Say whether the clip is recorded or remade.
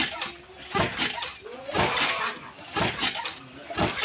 recorded